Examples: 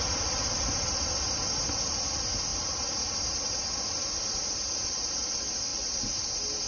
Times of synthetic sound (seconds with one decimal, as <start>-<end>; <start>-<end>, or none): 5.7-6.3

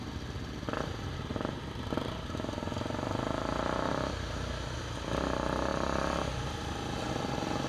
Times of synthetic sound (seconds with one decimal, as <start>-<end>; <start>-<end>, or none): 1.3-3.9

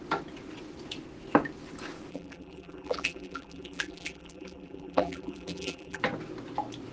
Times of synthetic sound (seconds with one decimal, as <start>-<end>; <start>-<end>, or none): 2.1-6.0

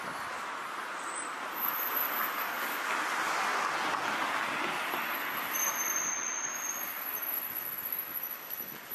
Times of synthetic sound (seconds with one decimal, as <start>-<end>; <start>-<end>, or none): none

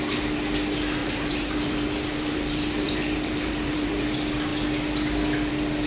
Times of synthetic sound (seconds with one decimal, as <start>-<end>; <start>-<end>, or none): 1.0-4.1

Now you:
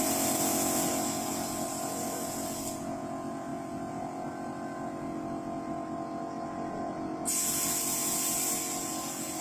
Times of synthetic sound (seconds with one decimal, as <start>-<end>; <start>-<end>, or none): none

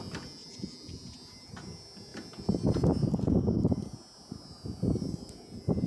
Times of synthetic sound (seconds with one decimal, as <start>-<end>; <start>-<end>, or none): 0.4-1.0